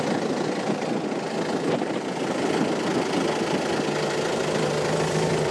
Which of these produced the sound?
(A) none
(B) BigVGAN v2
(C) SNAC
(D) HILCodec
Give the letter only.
A